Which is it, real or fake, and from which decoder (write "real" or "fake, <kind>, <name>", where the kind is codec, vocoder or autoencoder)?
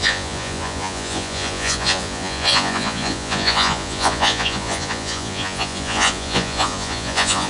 fake, vocoder, Vocos